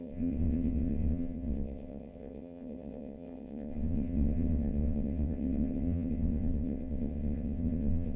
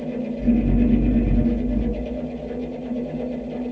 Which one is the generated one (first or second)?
first